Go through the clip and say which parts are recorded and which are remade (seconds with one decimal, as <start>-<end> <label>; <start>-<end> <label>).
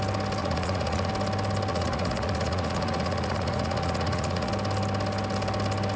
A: 0.0-0.4 recorded; 0.4-1.1 remade; 1.1-1.7 recorded; 1.7-4.5 remade; 4.5-6.0 recorded